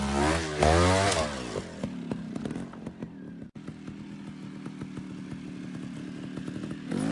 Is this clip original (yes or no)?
yes